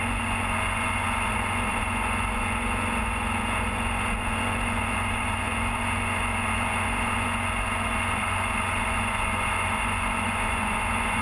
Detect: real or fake fake